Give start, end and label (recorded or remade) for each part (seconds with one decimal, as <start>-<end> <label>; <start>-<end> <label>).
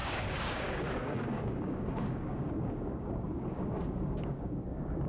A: 0.0-5.1 remade